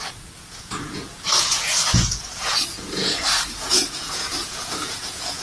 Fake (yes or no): yes